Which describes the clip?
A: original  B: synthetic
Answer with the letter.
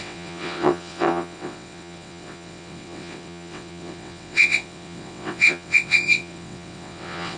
B